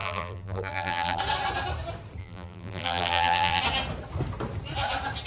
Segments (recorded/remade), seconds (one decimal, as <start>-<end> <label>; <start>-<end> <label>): 0.0-1.2 remade; 1.2-2.2 recorded; 2.2-3.6 remade; 3.6-5.3 recorded